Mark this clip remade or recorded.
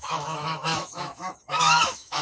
remade